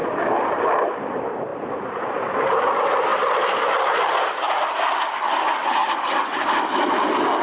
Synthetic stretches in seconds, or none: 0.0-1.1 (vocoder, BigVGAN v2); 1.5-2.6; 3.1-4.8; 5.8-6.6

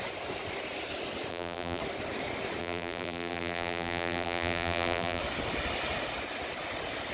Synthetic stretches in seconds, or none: 1.3-1.8 (vocoder, BigVGAN v2); 2.6-5.2

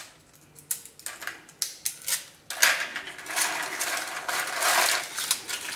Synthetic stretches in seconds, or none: 2.9-4.9 (vocoder, BigVGAN v2)

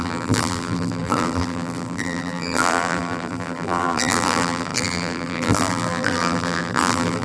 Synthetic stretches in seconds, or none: 0.0-7.2 (vocoder, BigVGAN v2)

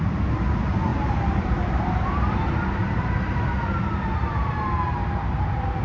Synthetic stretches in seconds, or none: 0.9-3.0 (vocoder, BigVGAN v2)

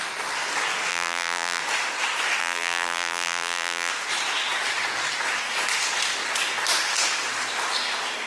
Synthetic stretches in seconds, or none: 0.9-1.6 (vocoder, BigVGAN v2); 2.4-3.9